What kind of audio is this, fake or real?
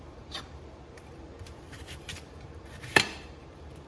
fake